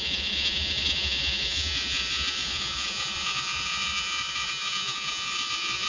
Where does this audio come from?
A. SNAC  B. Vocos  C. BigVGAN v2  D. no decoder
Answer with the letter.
B